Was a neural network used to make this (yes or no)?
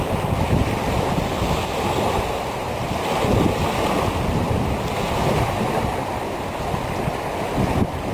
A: no